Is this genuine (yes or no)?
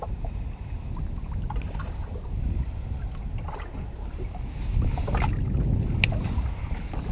yes